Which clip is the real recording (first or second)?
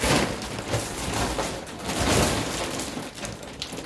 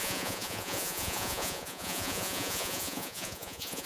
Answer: first